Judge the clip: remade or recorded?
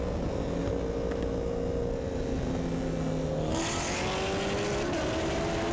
recorded